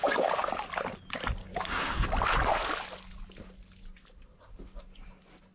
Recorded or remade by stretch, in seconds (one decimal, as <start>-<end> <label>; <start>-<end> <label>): 0.0-0.5 remade; 0.5-1.4 recorded; 1.4-2.1 remade; 2.1-5.5 recorded